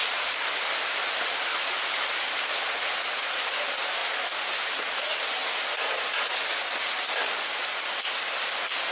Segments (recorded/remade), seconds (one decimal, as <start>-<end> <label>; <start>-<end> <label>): 0.0-2.0 remade; 2.0-8.9 recorded